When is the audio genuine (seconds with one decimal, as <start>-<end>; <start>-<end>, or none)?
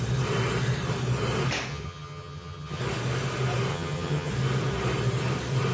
0.0-1.7; 2.8-3.7; 4.3-5.7